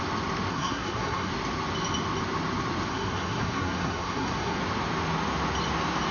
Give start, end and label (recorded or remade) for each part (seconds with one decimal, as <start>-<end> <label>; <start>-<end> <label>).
0.0-0.5 recorded; 0.5-1.3 remade; 1.3-2.9 recorded; 2.9-4.6 remade; 4.6-6.1 recorded